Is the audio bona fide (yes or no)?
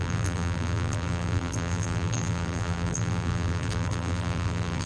no